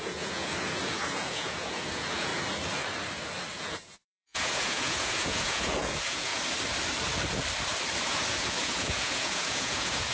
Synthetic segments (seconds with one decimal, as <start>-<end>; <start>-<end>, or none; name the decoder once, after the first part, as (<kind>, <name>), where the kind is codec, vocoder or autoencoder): 0.0-2.3 (vocoder, Vocos); 3.5-6.3; 8.0-10.1